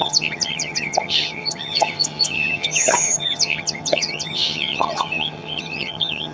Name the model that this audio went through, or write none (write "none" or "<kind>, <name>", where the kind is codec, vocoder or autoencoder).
vocoder, HiFi-GAN